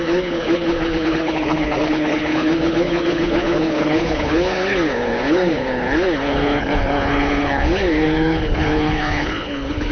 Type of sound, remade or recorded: remade